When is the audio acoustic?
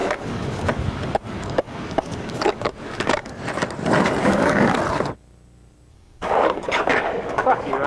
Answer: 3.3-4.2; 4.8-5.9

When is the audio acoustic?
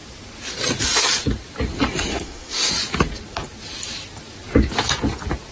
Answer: 0.0-2.1; 2.7-5.5